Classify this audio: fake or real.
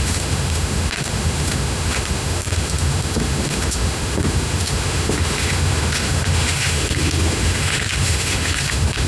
fake